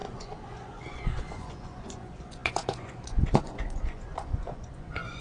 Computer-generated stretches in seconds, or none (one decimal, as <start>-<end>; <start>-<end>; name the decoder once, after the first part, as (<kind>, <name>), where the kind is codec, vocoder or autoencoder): 0.0-5.2 (vocoder, Vocos)